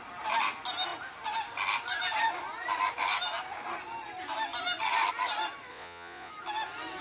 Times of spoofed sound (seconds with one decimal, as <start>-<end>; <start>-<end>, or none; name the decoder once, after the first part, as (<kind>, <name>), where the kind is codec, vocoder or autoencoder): 5.7-6.3 (vocoder, Vocos)